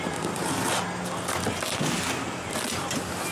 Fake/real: real